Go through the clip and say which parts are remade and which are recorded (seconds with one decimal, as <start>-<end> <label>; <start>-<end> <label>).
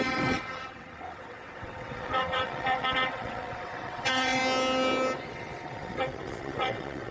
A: 0.0-4.4 remade; 4.4-5.3 recorded; 5.3-7.1 remade